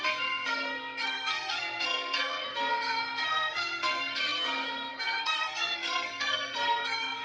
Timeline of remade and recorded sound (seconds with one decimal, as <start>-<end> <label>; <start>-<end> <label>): 0.0-7.2 remade